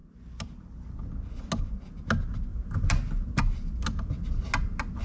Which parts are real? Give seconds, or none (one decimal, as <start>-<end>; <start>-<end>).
0.0-5.0

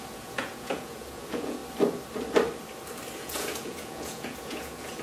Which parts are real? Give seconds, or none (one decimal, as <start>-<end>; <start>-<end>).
1.6-3.2

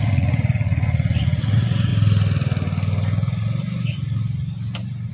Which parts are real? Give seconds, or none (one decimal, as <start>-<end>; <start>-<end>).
1.9-5.1

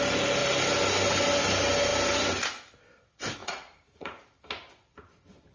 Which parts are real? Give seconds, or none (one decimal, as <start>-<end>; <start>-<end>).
0.0-3.4; 4.2-5.5

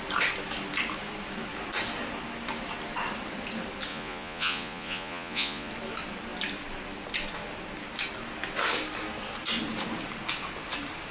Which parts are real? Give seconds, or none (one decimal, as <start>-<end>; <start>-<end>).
0.0-3.9; 5.7-11.1

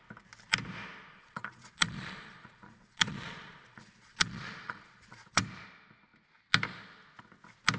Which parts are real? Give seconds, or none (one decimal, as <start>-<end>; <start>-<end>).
0.0-1.1; 5.4-7.8